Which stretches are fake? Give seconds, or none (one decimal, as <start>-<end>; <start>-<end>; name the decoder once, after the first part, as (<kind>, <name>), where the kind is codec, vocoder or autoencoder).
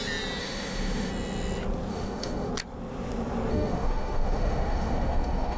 0.4-1.1 (autoencoder, DAC-VAE); 1.9-2.5; 3.5-5.6